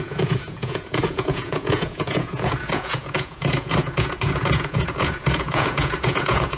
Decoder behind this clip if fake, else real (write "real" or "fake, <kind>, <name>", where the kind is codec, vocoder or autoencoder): fake, vocoder, Vocos